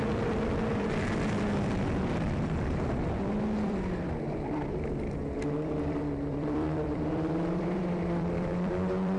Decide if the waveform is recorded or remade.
remade